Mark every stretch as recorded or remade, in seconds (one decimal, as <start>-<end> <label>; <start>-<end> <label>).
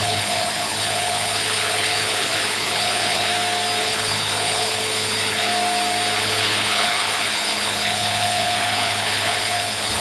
0.0-3.3 remade; 3.3-3.8 recorded; 3.8-5.5 remade; 5.5-6.2 recorded; 6.2-10.0 remade